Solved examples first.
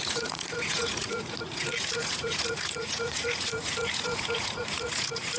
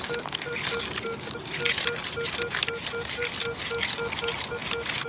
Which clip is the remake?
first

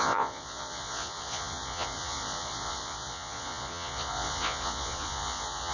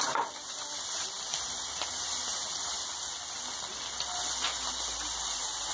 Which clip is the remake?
first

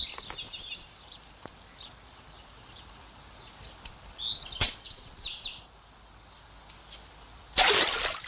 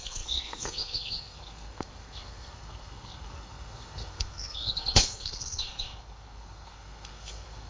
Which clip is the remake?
second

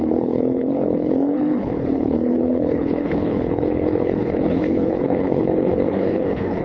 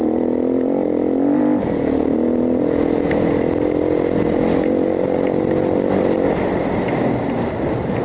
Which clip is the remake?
first